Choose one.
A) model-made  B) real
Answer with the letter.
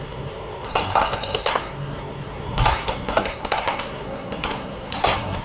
A